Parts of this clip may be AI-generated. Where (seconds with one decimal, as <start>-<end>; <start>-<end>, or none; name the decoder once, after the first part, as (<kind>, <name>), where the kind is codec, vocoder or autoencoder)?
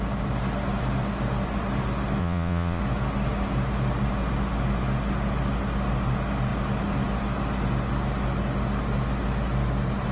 2.2-2.8 (vocoder, Vocos)